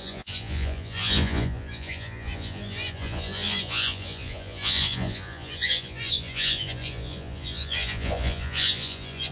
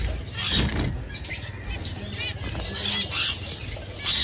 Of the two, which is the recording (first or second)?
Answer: second